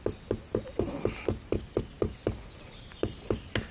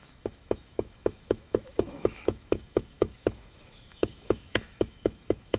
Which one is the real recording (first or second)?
first